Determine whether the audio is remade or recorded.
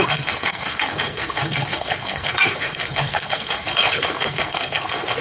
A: remade